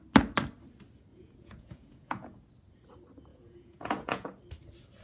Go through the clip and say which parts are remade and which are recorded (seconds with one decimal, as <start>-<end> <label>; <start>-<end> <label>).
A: 0.0-1.1 recorded; 1.1-2.5 remade; 2.5-3.3 recorded; 3.3-4.4 remade; 4.4-5.0 recorded